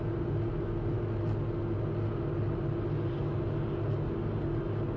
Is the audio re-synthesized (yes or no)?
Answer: no